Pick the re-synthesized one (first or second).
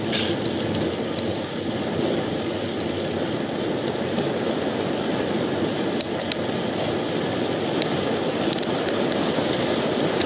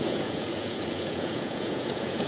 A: second